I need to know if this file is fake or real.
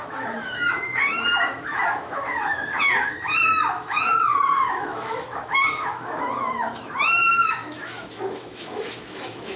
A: fake